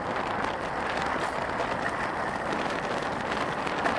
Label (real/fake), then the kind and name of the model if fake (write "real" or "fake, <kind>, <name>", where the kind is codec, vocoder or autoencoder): real